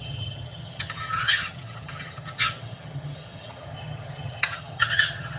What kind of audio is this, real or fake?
fake